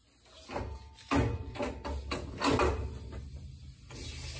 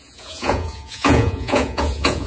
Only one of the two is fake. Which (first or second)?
second